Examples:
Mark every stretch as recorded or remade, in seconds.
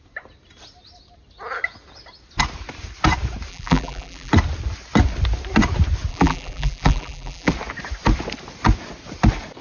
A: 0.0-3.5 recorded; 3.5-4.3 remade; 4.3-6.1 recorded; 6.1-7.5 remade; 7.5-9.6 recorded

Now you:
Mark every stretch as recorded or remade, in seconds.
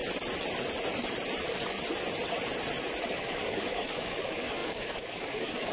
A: 0.0-3.1 recorded; 3.1-5.7 remade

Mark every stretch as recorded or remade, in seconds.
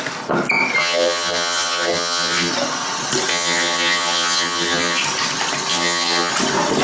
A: 0.0-0.8 recorded; 0.8-2.5 remade; 2.5-3.3 recorded; 3.3-5.0 remade; 5.0-5.7 recorded; 5.7-6.3 remade; 6.3-6.8 recorded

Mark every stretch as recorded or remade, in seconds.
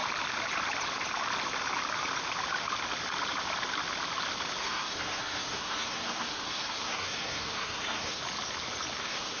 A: 0.0-4.6 recorded; 4.6-8.2 remade; 8.2-9.0 recorded; 9.0-9.4 remade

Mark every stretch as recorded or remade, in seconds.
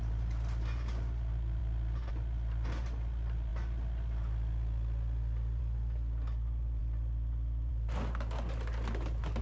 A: 0.0-9.4 recorded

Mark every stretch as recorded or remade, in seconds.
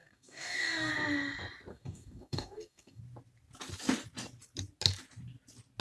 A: 0.0-0.9 remade; 0.9-1.7 recorded; 1.7-3.0 remade; 3.0-5.8 recorded